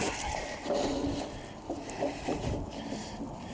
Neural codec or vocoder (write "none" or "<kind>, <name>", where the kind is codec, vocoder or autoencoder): none